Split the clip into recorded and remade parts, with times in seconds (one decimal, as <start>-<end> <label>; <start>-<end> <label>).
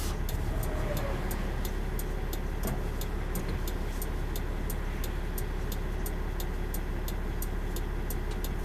0.0-8.6 recorded